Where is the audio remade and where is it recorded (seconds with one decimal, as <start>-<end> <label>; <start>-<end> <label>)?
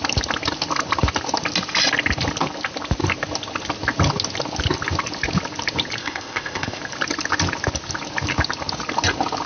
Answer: 0.0-6.0 recorded; 6.0-6.8 remade; 6.8-9.5 recorded